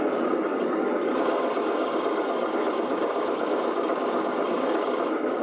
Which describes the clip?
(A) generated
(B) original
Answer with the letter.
A